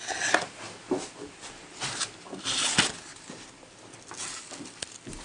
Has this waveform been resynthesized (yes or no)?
no